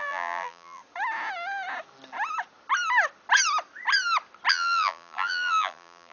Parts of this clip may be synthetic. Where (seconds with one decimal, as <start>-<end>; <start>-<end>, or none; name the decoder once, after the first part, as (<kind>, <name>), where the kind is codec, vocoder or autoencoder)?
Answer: 0.0-0.8 (vocoder, BigVGAN v2); 4.5-6.1